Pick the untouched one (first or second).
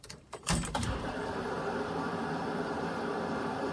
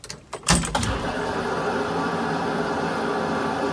second